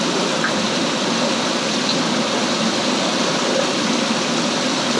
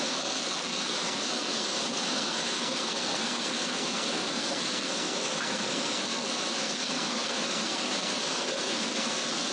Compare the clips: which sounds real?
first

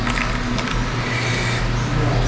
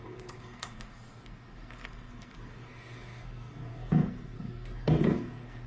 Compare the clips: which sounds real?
first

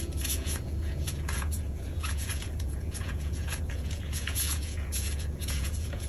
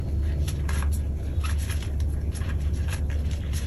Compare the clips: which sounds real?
second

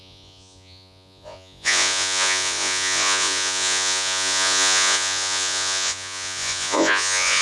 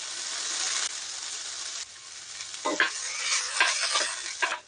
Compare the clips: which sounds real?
second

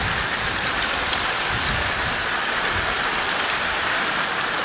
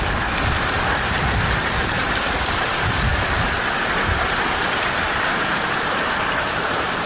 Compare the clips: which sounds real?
first